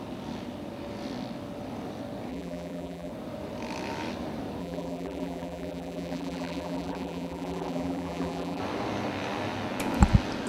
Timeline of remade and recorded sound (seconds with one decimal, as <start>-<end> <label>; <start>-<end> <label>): 0.0-2.3 recorded; 2.3-3.1 remade; 3.1-4.6 recorded; 4.6-8.6 remade; 8.6-10.5 recorded